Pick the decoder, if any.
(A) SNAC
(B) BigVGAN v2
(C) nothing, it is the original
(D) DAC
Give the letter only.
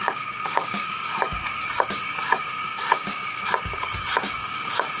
D